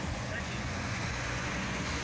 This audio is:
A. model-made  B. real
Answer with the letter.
A